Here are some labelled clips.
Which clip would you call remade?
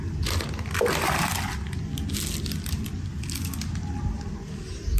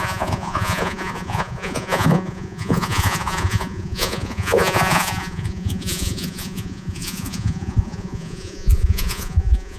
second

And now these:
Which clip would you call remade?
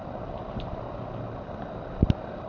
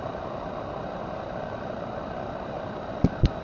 second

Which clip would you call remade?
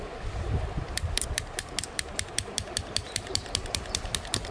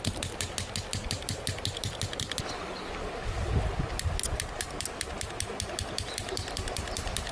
first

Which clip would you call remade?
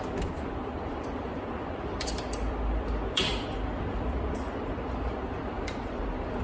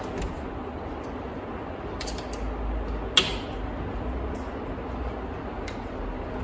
first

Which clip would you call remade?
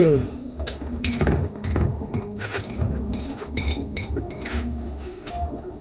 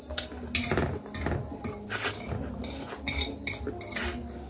first